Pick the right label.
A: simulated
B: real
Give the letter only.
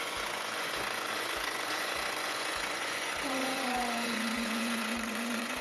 A